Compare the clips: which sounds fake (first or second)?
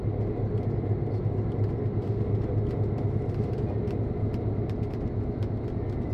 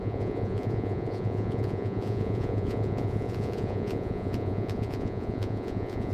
second